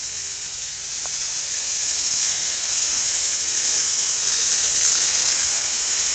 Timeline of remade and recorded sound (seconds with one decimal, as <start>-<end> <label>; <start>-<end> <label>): 0.0-0.8 remade; 0.8-1.5 recorded; 1.5-6.1 remade